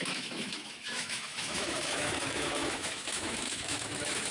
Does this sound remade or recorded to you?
remade